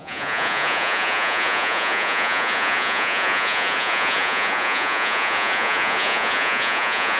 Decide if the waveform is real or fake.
fake